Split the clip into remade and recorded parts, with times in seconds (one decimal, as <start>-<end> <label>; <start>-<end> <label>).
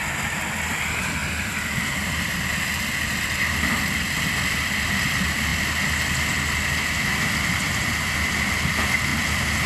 0.0-5.5 remade; 5.5-8.5 recorded; 8.5-9.1 remade; 9.1-9.7 recorded